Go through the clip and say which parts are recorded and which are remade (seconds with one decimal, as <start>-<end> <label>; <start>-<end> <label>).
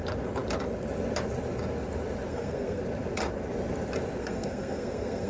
0.0-2.3 recorded; 2.3-2.8 remade; 2.8-4.2 recorded; 4.2-5.3 remade